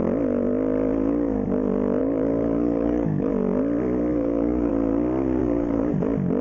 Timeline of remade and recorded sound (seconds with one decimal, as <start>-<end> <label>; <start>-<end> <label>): 0.0-2.0 recorded; 2.0-3.3 remade; 3.3-4.1 recorded; 4.1-4.7 remade; 4.7-5.4 recorded; 5.4-5.9 remade; 5.9-6.4 recorded